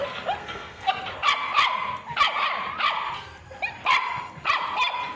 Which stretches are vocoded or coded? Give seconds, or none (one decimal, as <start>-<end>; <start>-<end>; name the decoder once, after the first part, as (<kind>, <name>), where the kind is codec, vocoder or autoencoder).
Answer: 0.4-0.9 (codec, SNAC)